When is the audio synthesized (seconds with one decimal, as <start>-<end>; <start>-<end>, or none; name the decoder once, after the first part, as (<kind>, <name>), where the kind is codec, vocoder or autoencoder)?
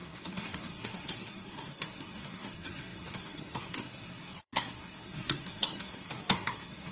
0.0-6.9 (codec, SNAC)